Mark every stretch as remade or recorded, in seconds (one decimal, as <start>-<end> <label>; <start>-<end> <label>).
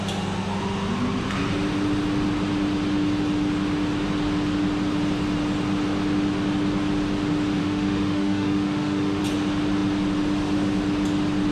0.0-7.6 recorded; 7.6-9.2 remade; 9.2-11.5 recorded